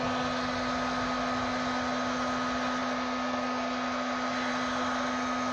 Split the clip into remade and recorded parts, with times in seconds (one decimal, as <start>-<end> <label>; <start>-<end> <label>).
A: 0.0-5.5 recorded